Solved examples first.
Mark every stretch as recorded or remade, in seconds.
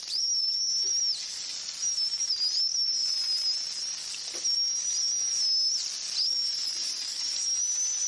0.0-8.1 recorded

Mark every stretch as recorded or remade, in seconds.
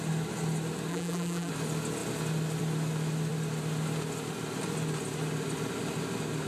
0.0-0.9 recorded; 0.9-1.5 remade; 1.5-6.5 recorded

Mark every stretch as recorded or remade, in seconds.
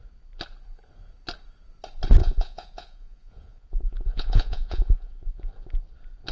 0.0-2.2 recorded; 2.2-5.4 remade; 5.4-6.3 recorded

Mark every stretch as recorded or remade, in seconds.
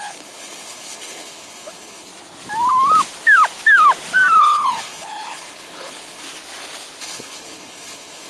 0.0-2.1 remade; 2.1-4.4 recorded; 4.4-6.2 remade; 6.2-7.0 recorded; 7.0-8.3 remade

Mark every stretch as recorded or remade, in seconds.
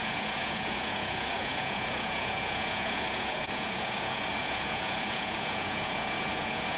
0.0-6.8 remade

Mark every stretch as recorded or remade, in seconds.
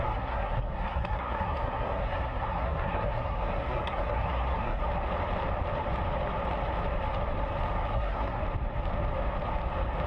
0.0-4.8 remade; 4.8-7.9 recorded; 7.9-8.4 remade; 8.4-10.1 recorded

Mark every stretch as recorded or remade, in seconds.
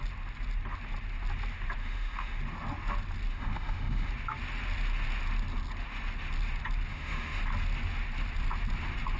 0.0-1.8 recorded; 1.8-2.4 remade; 2.4-3.3 recorded; 3.3-4.1 remade; 4.1-6.9 recorded; 6.9-7.4 remade; 7.4-9.2 recorded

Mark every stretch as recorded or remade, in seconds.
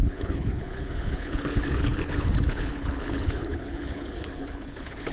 0.0-5.1 remade